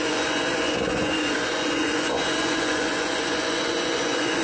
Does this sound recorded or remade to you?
remade